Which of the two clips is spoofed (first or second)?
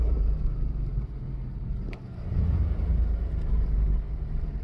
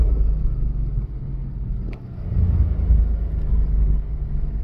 first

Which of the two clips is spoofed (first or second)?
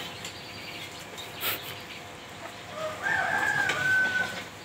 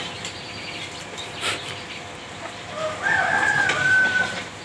second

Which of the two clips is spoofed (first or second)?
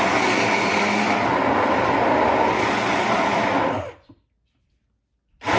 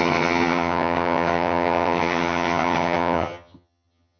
second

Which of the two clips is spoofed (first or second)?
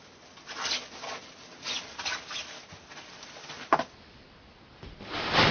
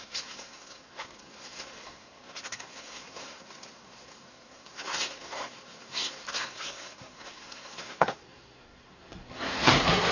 second